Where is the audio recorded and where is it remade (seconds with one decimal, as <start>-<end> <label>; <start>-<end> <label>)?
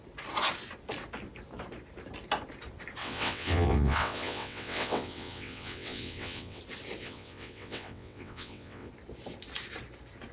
0.0-3.0 recorded; 3.0-6.6 remade; 6.6-7.0 recorded; 7.0-8.9 remade; 8.9-10.3 recorded